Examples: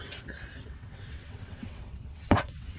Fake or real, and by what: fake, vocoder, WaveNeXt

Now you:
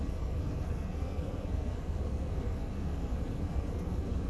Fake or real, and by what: fake, codec, SNAC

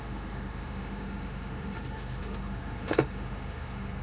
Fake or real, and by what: fake, autoencoder, DAC-VAE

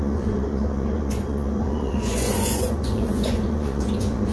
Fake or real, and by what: fake, vocoder, Vocos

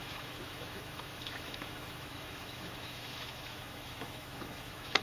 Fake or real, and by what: fake, autoencoder, DAC-VAE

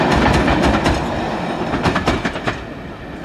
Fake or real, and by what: fake, vocoder, BigVGAN v2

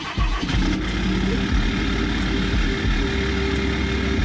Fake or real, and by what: real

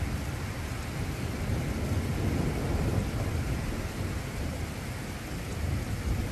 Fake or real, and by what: real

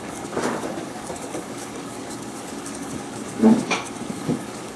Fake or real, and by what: fake, codec, DAC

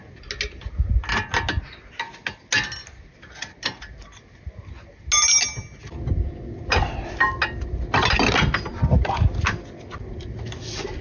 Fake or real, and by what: real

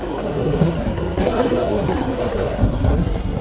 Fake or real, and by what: fake, codec, SNAC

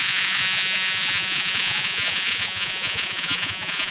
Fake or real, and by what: fake, vocoder, Vocos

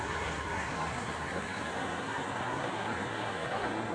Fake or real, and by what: fake, codec, SNAC